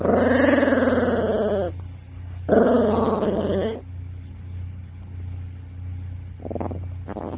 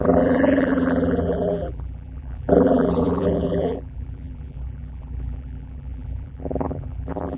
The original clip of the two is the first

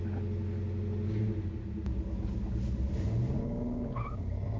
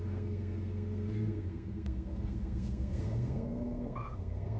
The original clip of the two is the first